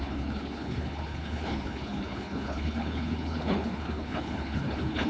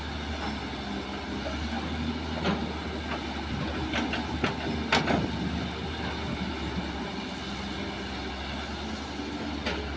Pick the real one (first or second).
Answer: second